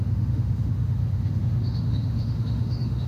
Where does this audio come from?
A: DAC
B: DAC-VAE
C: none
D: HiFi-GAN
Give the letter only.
B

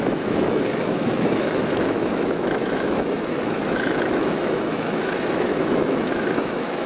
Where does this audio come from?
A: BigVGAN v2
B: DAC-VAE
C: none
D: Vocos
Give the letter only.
B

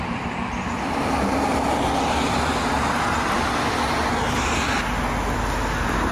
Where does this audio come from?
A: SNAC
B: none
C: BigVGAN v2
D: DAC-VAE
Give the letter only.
B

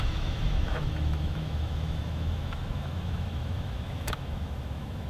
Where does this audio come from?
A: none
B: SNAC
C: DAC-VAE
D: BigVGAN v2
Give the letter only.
C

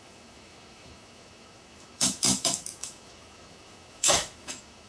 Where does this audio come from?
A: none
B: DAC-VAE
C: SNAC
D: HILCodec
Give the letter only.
B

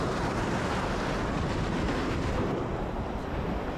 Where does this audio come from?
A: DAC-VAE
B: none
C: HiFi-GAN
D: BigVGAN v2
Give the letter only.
B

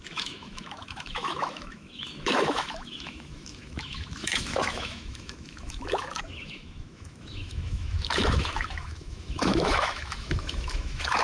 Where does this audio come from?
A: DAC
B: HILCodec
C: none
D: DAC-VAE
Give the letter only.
D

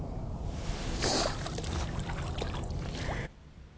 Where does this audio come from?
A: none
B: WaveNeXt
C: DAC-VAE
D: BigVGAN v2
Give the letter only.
A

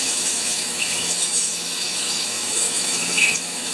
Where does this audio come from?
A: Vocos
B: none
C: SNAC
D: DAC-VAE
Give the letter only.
D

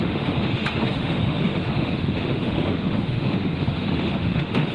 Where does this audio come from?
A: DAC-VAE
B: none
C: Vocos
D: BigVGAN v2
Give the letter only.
A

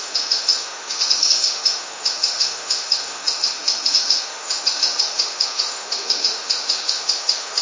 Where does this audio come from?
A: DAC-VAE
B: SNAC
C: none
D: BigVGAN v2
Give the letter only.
A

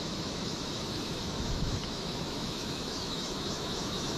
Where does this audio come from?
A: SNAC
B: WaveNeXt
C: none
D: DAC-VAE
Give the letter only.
D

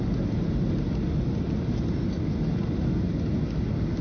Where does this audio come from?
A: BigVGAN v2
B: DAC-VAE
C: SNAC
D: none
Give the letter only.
D